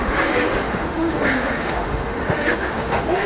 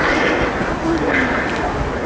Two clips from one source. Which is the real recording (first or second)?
second